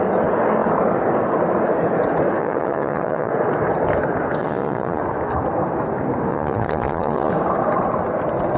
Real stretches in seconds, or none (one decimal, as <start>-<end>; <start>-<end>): 0.0-2.4; 3.3-4.4; 5.0-6.3; 7.3-8.6